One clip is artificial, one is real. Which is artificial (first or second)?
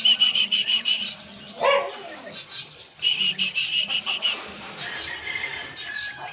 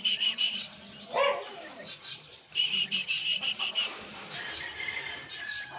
second